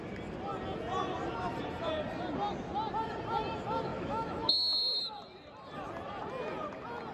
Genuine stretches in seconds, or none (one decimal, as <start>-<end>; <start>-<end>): 0.0-3.9; 5.0-7.1